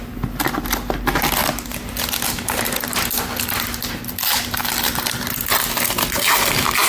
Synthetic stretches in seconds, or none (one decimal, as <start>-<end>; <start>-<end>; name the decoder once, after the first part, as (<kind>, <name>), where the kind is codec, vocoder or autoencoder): none